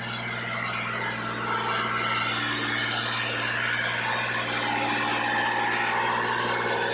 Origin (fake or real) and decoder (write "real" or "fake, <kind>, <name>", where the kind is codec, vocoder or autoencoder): real